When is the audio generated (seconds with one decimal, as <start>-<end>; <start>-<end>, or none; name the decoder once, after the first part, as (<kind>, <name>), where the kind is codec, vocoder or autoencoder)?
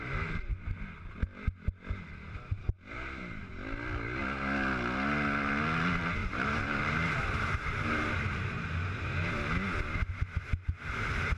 6.2-8.1 (vocoder, BigVGAN v2); 10.5-11.4